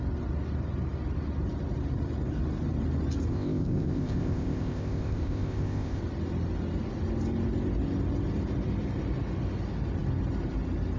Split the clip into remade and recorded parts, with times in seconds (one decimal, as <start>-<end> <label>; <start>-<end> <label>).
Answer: 0.0-3.3 recorded; 3.3-6.0 remade; 6.0-11.0 recorded

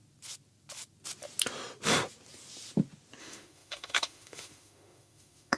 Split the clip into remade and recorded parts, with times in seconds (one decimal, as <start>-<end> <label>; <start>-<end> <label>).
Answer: 0.0-3.2 recorded; 3.2-5.6 remade

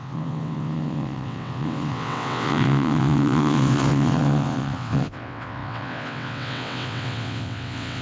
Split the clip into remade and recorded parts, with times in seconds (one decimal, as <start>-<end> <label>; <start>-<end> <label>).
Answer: 0.0-8.0 remade

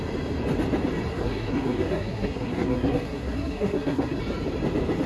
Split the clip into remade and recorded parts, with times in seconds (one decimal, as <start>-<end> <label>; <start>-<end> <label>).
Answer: 0.0-1.1 recorded; 1.1-4.2 remade; 4.2-5.1 recorded

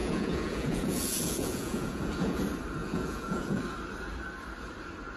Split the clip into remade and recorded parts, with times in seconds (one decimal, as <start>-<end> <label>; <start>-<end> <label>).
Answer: 0.0-2.4 remade; 2.4-2.8 recorded; 2.8-3.6 remade; 3.6-5.2 recorded

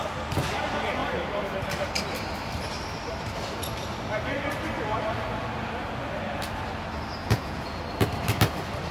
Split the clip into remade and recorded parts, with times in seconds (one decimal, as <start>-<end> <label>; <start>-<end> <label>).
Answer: 0.0-7.2 recorded; 7.2-7.8 remade; 7.8-8.9 recorded

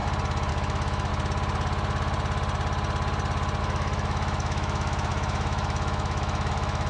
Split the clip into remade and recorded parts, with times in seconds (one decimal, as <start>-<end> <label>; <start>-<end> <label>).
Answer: 0.0-0.5 recorded; 0.5-1.1 remade; 1.1-3.6 recorded; 3.6-6.9 remade

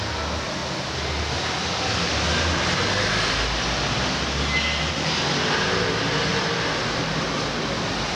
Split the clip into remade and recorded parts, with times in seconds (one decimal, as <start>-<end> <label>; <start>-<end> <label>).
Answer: 0.0-6.3 recorded; 6.3-7.2 remade; 7.2-8.1 recorded